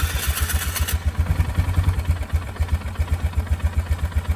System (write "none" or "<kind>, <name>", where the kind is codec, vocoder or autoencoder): none